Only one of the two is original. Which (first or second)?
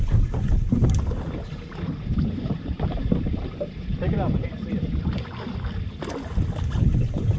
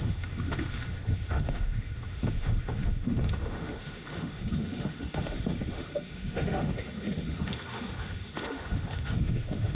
first